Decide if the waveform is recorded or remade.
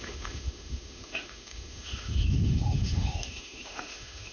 remade